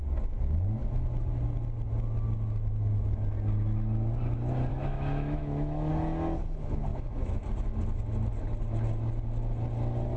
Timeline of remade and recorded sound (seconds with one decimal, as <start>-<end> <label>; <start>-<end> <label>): 0.0-4.7 recorded; 4.7-5.9 remade; 5.9-6.9 recorded; 6.9-7.4 remade; 7.4-10.2 recorded